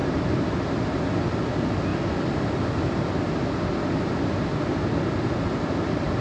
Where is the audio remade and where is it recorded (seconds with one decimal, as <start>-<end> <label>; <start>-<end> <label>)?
0.0-0.7 remade; 0.7-6.2 recorded